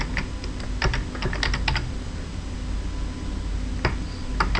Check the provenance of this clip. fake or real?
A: real